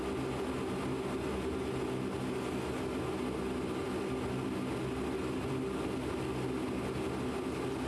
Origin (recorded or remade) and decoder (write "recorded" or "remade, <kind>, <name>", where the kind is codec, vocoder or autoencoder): recorded